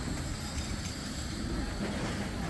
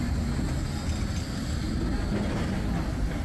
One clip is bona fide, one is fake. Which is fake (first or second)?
first